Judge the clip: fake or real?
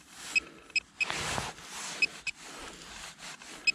real